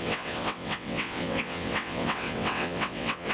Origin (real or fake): fake